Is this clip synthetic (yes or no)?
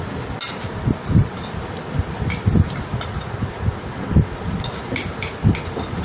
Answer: no